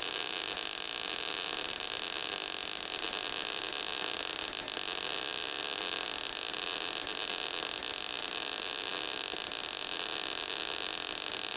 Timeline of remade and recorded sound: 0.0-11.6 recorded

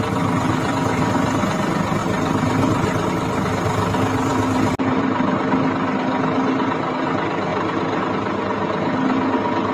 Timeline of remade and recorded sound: 0.0-2.0 recorded; 2.0-3.1 remade; 3.1-9.7 recorded

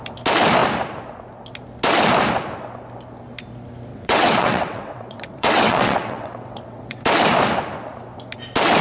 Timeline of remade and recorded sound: 0.0-3.9 recorded; 3.9-7.0 remade; 7.0-8.8 recorded

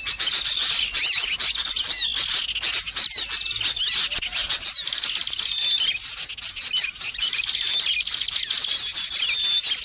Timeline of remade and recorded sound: 0.0-9.8 recorded

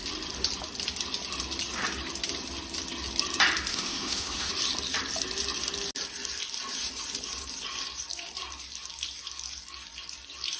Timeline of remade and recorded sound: 0.0-3.7 recorded; 3.7-4.5 remade; 4.5-10.6 recorded

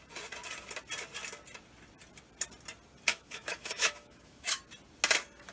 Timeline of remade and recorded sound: 0.0-3.1 recorded; 3.1-4.6 remade; 4.6-5.5 recorded